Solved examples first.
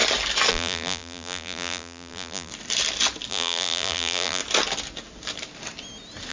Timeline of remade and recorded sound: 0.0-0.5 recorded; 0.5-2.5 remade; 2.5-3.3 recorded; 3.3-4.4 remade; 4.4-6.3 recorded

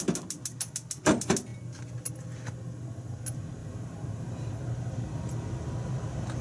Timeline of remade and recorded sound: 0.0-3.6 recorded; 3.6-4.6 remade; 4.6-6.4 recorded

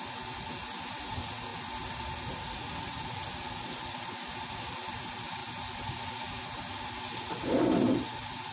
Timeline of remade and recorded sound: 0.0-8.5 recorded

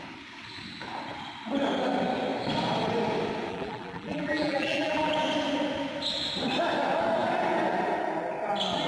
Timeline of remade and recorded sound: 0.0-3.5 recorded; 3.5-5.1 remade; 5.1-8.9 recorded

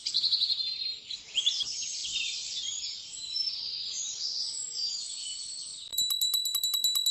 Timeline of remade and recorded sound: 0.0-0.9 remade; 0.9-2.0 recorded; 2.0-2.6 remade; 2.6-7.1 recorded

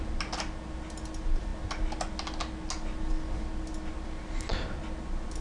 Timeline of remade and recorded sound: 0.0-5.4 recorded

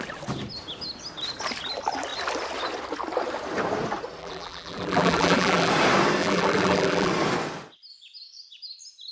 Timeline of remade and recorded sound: 0.0-4.2 recorded; 4.2-5.7 remade; 5.7-6.2 recorded; 6.2-7.1 remade; 7.1-9.1 recorded